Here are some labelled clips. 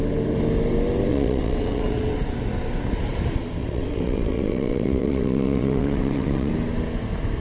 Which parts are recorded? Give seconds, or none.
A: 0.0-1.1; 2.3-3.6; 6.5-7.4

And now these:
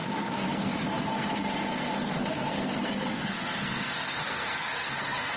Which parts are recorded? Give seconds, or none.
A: none

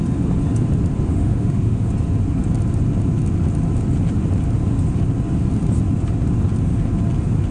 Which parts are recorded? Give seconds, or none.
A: 0.0-1.1; 1.9-7.5

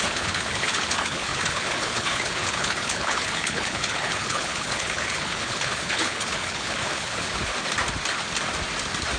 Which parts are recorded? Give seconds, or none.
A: 7.5-9.2

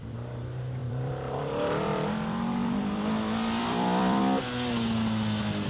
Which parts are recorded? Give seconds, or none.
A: 0.0-0.8; 4.2-5.7

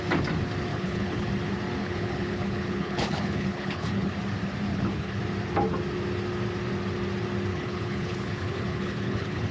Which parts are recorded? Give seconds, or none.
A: 0.0-0.7; 1.3-1.8; 4.1-4.7; 5.2-7.5